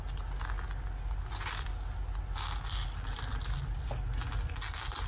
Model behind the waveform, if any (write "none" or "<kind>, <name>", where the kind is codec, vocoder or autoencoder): none